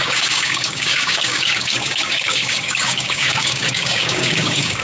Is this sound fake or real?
fake